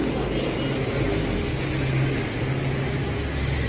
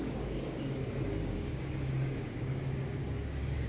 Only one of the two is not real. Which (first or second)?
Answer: second